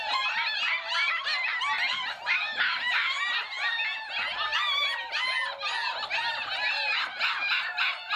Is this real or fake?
real